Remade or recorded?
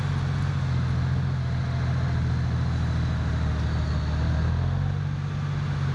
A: recorded